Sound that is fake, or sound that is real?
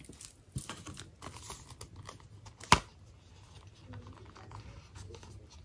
real